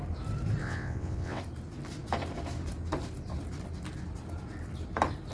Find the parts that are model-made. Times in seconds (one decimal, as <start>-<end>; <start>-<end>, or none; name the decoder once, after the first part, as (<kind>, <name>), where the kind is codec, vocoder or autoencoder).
0.6-1.4 (vocoder, WaveNeXt)